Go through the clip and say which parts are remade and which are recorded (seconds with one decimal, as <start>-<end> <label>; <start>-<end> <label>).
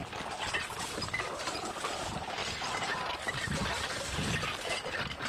0.0-0.8 recorded; 0.8-2.4 remade; 2.4-5.3 recorded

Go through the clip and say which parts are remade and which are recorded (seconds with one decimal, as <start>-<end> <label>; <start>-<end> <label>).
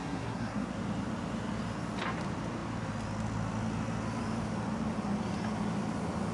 0.0-0.7 remade; 0.7-6.3 recorded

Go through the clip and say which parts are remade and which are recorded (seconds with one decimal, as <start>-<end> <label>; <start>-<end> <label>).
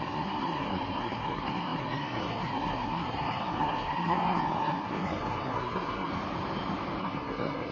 0.0-6.1 remade; 6.1-7.0 recorded; 7.0-7.7 remade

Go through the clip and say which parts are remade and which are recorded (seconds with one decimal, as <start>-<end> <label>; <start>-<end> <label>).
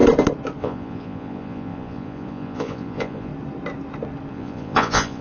0.0-0.6 recorded; 0.6-3.3 remade; 3.3-4.3 recorded; 4.3-5.2 remade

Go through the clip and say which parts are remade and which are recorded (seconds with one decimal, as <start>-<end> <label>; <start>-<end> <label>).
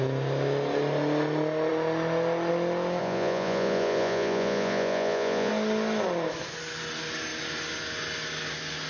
0.0-3.0 recorded; 3.0-5.5 remade; 5.5-8.9 recorded